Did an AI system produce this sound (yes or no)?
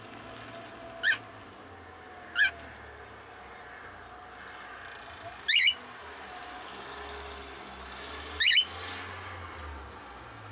no